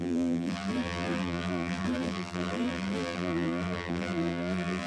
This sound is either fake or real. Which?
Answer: fake